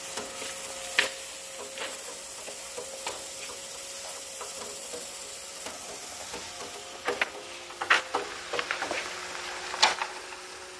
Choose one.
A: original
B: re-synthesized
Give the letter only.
A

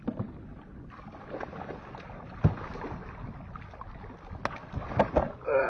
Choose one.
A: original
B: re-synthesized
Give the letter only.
A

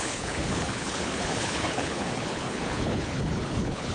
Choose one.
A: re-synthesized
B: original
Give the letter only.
A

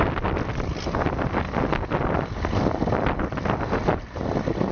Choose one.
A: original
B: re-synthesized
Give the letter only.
A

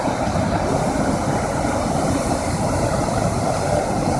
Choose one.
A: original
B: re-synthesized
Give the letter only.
A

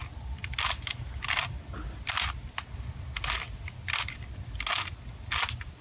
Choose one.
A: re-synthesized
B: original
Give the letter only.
B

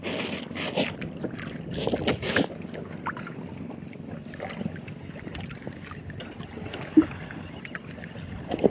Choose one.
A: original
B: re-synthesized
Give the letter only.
A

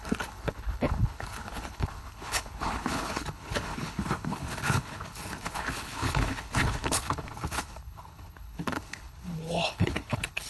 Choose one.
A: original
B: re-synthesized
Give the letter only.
B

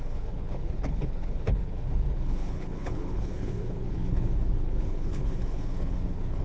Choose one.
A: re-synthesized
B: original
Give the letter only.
A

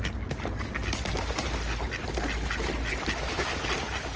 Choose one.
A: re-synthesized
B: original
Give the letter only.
B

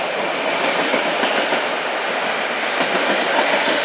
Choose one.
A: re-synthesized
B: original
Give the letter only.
B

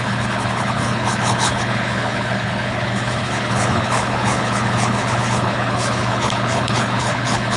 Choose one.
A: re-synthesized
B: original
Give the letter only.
A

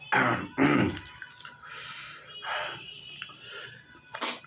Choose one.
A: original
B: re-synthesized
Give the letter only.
A